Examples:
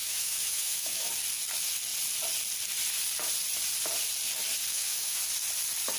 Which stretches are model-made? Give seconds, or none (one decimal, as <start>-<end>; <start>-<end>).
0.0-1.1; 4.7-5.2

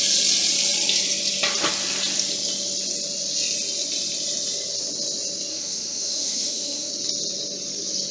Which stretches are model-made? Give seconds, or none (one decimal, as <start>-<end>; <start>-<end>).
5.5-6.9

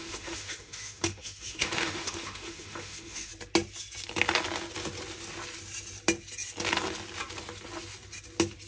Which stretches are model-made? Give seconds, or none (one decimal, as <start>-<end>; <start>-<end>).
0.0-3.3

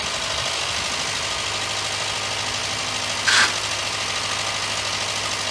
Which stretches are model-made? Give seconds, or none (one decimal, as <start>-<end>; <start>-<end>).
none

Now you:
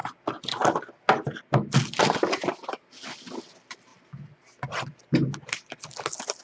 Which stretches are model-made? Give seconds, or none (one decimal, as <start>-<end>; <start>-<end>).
none